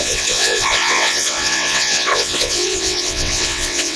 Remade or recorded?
remade